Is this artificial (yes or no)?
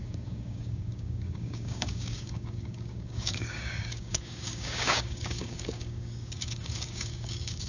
yes